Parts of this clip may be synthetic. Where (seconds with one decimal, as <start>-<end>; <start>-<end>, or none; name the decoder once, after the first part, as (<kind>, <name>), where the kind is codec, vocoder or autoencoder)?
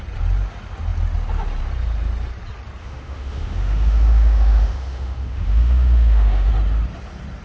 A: 2.8-6.5 (autoencoder, DAC-VAE)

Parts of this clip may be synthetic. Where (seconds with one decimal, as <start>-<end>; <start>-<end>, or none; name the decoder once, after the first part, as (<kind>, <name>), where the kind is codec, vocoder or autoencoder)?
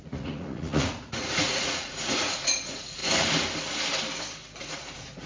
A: 0.0-3.0 (vocoder, Vocos); 4.6-5.3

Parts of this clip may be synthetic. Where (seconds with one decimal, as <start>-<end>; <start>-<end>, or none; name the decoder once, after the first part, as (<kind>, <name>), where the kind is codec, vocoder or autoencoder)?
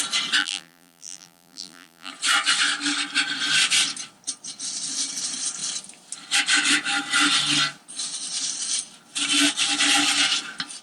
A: 0.4-2.1 (vocoder, BigVGAN v2)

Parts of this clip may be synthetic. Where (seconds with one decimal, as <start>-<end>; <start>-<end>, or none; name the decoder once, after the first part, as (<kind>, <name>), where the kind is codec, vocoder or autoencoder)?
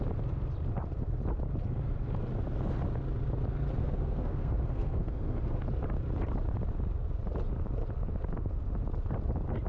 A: 3.8-5.6 (codec, SNAC)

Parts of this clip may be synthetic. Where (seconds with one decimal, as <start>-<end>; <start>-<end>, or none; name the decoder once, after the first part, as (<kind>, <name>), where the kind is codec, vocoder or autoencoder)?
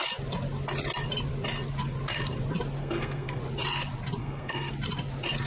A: 2.8-3.4 (codec, SNAC); 4.2-4.7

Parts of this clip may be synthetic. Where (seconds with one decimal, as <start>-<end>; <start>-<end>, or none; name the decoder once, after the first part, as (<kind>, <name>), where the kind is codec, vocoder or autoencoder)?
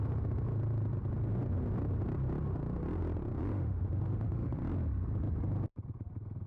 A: 3.5-4.6 (autoencoder, DAC-VAE)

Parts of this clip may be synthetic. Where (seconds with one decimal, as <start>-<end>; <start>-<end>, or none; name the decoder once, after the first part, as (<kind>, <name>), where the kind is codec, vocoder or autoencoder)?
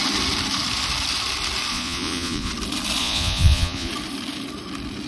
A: 1.7-2.5 (vocoder, Vocos); 3.0-3.9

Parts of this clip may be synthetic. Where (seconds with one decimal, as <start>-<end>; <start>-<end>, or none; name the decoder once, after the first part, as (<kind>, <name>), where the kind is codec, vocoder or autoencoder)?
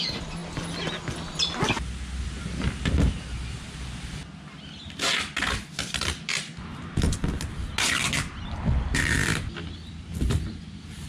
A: 0.0-0.4 (vocoder, BigVGAN v2); 2.2-4.2; 5.6-6.5; 8.4-11.1